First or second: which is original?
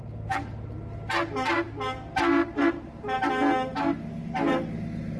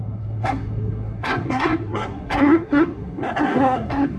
first